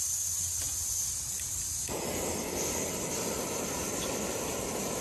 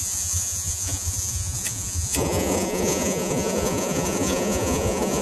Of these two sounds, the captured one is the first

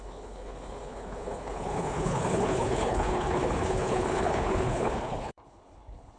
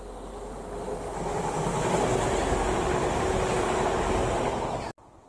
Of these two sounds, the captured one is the second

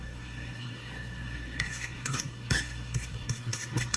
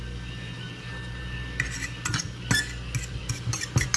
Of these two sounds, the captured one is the second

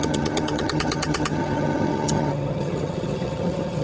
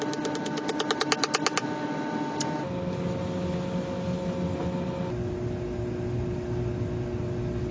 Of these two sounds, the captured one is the second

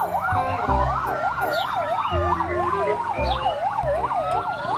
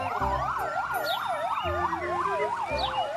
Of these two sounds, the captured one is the second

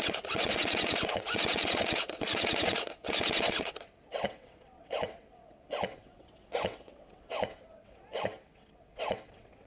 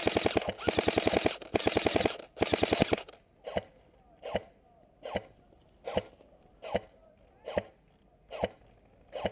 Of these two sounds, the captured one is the second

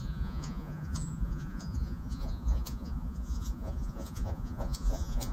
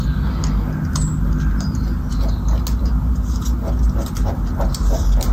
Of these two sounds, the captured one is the second